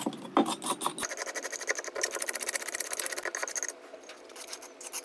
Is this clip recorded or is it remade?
recorded